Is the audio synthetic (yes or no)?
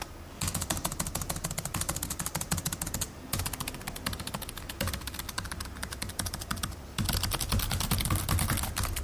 no